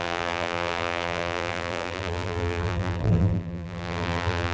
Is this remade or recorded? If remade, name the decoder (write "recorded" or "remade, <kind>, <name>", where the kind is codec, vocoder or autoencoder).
remade, vocoder, BigVGAN v2